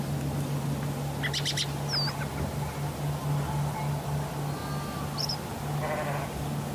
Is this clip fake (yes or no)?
no